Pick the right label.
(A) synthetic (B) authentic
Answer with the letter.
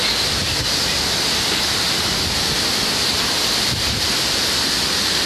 B